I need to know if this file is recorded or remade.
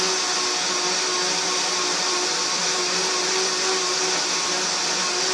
recorded